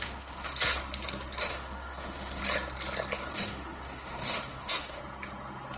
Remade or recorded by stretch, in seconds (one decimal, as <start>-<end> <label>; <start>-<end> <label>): 0.0-0.5 remade; 0.5-1.4 recorded; 1.4-2.4 remade; 2.4-3.3 recorded; 3.3-5.0 remade; 5.0-5.8 recorded